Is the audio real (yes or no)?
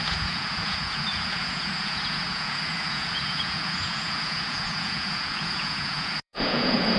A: no